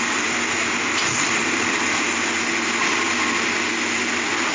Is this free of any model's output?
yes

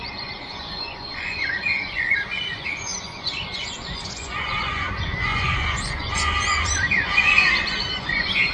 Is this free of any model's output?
no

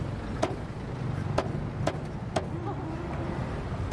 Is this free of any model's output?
yes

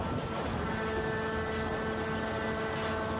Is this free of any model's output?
yes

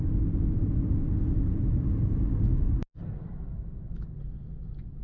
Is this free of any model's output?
yes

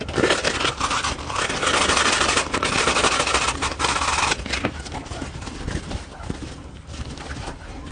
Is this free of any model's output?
no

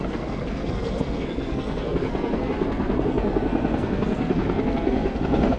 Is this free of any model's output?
no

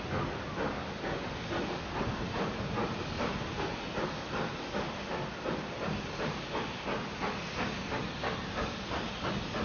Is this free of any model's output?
yes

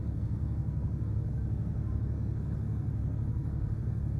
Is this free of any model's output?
no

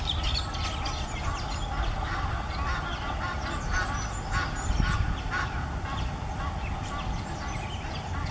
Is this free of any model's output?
yes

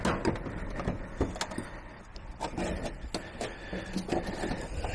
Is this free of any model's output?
yes